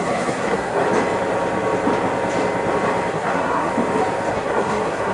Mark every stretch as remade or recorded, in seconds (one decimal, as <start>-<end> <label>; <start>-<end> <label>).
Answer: 0.0-0.8 remade; 0.8-3.1 recorded; 3.1-3.7 remade; 3.7-4.3 recorded; 4.3-5.1 remade